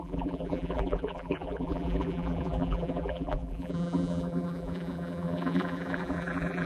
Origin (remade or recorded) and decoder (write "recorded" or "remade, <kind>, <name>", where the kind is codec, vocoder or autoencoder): remade, vocoder, BigVGAN v2